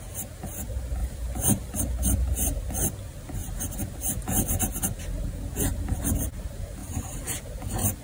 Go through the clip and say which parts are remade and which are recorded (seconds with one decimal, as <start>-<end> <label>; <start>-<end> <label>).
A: 0.0-1.0 recorded; 1.0-1.8 remade; 1.8-3.4 recorded; 3.4-4.5 remade; 4.5-5.7 recorded; 5.7-6.3 remade; 6.3-6.8 recorded; 6.8-7.4 remade; 7.4-8.0 recorded